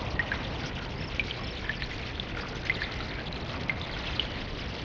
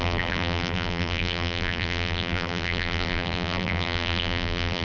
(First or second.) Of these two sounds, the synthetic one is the second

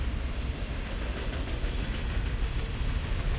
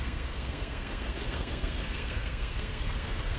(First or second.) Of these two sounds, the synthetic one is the second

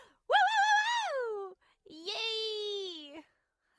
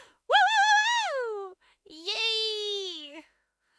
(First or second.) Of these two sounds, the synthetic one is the second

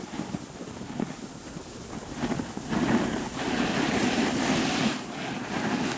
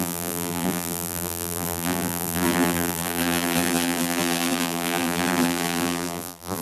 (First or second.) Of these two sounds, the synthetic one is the second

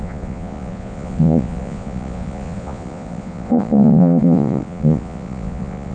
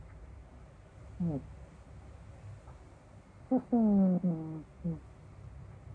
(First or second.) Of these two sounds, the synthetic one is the first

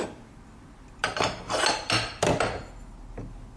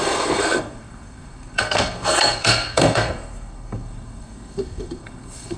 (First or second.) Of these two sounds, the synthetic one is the second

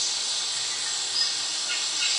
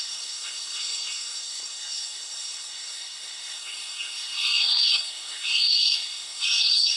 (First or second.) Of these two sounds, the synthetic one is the second